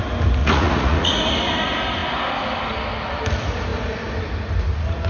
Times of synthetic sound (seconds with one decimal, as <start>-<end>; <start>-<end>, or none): 0.4-1.1